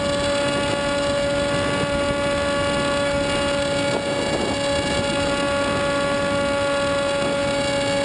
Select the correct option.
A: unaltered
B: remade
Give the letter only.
A